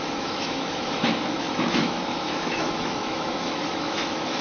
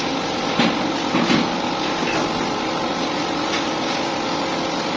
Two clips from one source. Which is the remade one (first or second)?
first